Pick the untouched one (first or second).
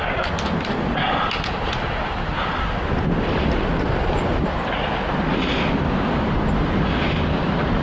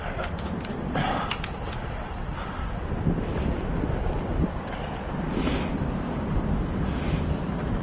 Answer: first